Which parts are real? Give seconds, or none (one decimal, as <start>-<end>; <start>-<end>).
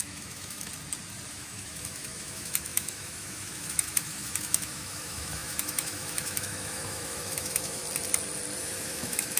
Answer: 0.7-1.3; 7.8-8.6